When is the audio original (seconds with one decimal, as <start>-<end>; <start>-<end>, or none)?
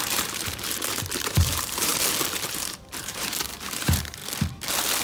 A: 1.9-2.5; 4.2-5.0